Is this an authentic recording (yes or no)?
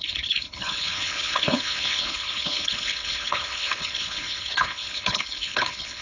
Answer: no